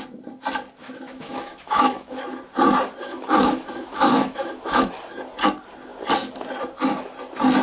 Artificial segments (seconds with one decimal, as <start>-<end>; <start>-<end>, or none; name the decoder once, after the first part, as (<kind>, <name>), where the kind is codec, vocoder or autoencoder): 0.8-2.2 (autoencoder, DAC-VAE); 3.0-4.9